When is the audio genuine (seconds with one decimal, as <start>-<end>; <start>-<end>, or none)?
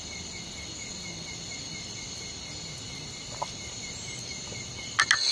0.0-5.3